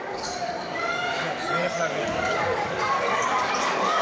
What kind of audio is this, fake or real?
fake